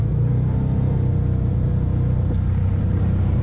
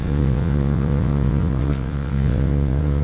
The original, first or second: first